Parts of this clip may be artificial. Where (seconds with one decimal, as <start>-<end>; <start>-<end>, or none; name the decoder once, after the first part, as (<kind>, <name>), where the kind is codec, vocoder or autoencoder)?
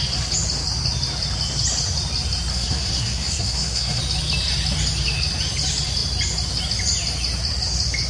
2.5-4.0 (codec, SNAC)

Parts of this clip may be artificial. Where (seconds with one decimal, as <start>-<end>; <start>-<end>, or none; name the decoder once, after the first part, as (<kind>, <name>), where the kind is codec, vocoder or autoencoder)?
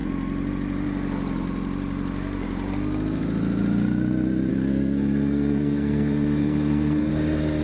4.5-7.1 (codec, SNAC)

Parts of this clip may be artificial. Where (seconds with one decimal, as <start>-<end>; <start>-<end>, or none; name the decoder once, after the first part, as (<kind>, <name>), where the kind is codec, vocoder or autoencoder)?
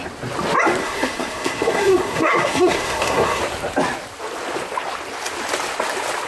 0.8-3.4 (codec, SNAC)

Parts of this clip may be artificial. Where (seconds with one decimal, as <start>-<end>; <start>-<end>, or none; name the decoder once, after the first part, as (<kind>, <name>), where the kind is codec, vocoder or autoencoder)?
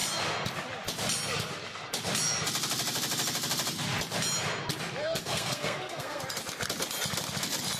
5.0-6.2 (codec, SNAC)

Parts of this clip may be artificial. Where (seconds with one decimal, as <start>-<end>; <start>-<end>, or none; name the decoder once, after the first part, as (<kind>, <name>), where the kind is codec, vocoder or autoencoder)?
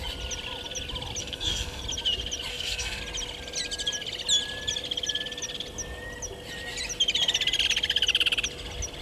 1.2-1.8 (codec, SNAC); 2.5-3.0